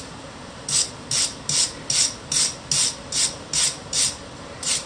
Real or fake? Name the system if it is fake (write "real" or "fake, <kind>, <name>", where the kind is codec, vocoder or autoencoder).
real